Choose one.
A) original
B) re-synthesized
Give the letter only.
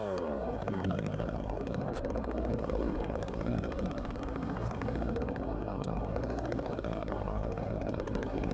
B